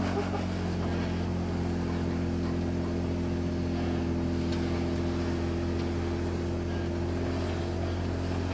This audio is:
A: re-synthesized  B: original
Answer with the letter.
B